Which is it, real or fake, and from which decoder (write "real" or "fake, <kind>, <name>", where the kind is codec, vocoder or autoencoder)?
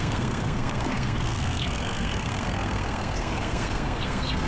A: fake, codec, SNAC